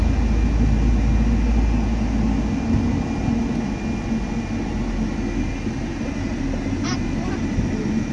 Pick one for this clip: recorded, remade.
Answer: recorded